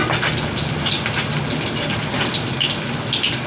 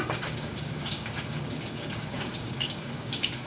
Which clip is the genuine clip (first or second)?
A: first